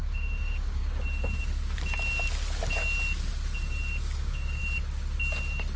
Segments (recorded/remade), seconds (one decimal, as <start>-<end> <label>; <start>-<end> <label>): 0.0-0.8 remade; 0.8-4.0 recorded; 4.0-4.6 remade; 4.6-5.8 recorded